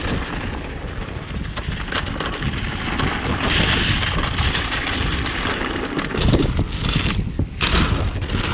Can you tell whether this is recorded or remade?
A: recorded